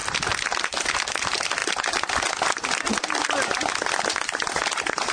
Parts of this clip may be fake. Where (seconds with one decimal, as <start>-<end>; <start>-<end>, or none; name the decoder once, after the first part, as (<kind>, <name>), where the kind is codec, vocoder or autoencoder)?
none